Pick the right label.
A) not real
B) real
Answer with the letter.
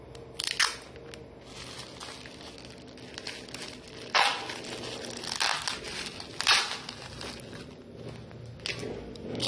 B